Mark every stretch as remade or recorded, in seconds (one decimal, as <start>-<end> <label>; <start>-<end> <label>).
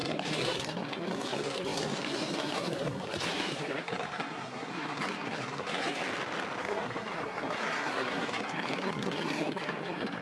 0.0-6.0 remade; 6.0-6.6 recorded; 6.6-10.2 remade